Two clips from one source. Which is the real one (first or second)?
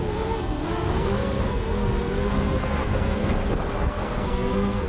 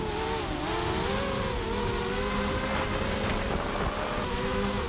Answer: second